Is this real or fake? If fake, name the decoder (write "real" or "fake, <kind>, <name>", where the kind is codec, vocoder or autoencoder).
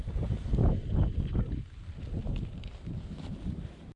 real